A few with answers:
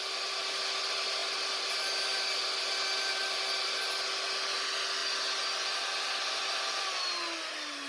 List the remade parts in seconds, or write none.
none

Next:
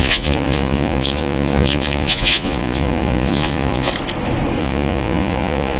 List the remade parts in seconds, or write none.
0.0-3.9 (vocoder, Vocos); 4.6-5.8

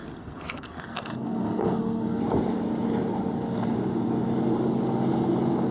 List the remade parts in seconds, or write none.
0.0-2.2 (codec, SNAC)